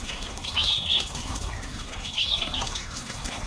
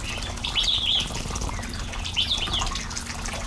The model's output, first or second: first